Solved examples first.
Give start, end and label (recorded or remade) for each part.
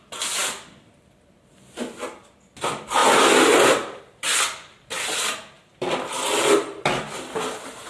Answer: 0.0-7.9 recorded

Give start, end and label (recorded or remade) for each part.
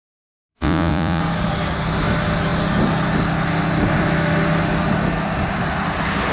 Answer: 0.0-0.5 recorded; 0.5-1.2 remade; 1.2-6.3 recorded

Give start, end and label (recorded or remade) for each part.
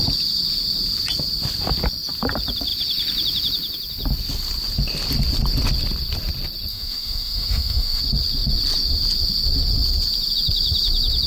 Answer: 0.0-6.7 recorded; 6.7-8.0 remade; 8.0-11.3 recorded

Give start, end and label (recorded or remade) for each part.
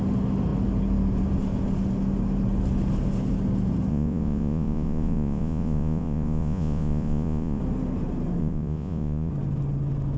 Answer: 0.0-3.9 recorded; 3.9-7.6 remade; 7.6-8.4 recorded; 8.4-9.3 remade; 9.3-10.2 recorded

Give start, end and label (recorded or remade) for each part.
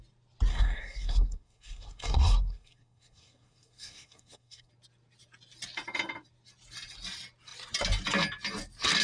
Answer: 0.0-0.5 recorded; 0.5-4.7 remade; 4.7-9.0 recorded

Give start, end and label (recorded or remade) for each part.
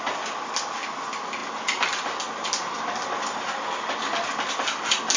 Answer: 0.0-5.2 recorded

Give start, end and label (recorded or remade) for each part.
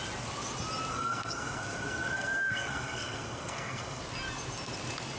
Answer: 0.0-0.9 recorded; 0.9-4.0 remade; 4.0-5.2 recorded